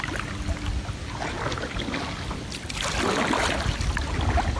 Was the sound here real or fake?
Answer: real